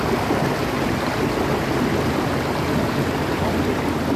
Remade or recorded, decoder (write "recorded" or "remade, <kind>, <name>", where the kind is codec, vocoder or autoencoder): recorded